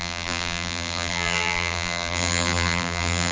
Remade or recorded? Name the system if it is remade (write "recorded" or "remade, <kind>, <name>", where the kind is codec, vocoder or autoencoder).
remade, vocoder, BigVGAN v2